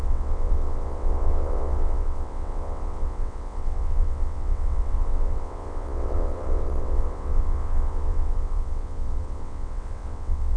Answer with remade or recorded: remade